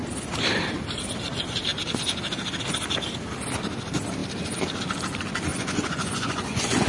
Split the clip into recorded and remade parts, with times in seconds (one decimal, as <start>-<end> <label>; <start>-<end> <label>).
0.0-5.5 recorded; 5.5-6.9 remade